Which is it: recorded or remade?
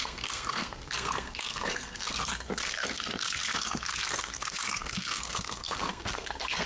remade